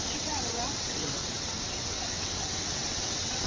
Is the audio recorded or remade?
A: remade